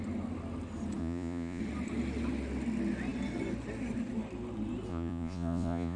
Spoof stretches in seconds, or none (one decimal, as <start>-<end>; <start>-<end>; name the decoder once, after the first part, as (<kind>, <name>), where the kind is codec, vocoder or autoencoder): 1.0-1.6 (vocoder, Vocos); 4.9-6.0